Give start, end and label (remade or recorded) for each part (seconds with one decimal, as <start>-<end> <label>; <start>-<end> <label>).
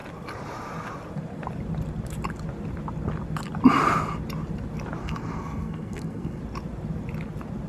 0.0-5.0 recorded; 5.0-6.4 remade; 6.4-7.7 recorded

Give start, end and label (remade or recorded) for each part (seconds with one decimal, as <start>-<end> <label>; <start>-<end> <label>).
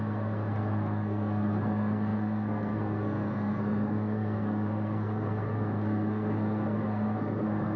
0.0-7.8 remade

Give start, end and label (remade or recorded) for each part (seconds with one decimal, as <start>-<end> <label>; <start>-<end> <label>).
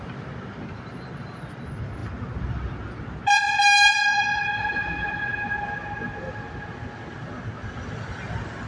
0.0-8.7 recorded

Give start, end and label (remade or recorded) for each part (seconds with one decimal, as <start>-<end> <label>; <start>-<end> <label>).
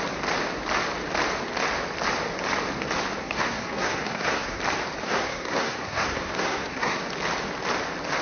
0.0-3.2 recorded; 3.2-4.6 remade; 4.6-5.0 recorded; 5.0-7.0 remade; 7.0-8.2 recorded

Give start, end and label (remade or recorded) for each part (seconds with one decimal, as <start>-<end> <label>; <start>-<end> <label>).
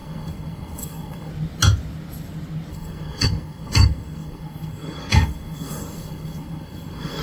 0.0-1.3 remade; 1.3-2.7 recorded; 2.7-7.2 remade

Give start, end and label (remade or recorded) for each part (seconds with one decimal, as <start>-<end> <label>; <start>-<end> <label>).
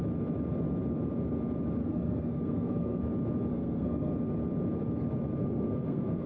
0.0-1.8 recorded; 1.8-3.0 remade; 3.0-3.5 recorded; 3.5-4.1 remade; 4.1-5.4 recorded; 5.4-6.3 remade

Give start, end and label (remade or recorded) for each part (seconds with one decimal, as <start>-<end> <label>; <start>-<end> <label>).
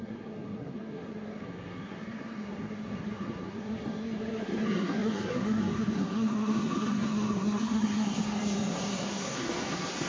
0.0-10.1 remade